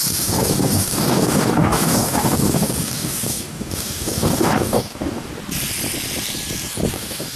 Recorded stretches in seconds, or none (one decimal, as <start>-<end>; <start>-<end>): 5.3-6.9